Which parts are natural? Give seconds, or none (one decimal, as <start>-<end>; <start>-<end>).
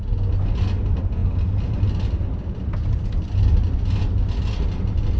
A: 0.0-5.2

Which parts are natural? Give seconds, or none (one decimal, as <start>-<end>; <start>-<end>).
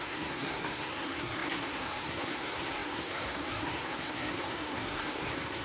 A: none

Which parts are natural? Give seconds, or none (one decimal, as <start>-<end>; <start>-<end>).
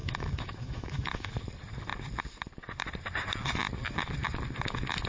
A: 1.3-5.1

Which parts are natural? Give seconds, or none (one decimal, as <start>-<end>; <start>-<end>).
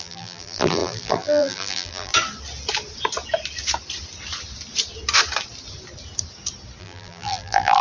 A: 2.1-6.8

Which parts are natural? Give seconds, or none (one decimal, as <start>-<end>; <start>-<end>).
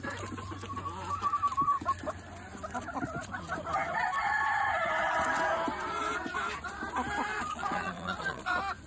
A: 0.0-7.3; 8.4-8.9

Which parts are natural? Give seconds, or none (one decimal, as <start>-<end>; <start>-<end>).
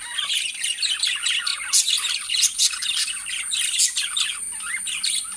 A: 0.0-5.4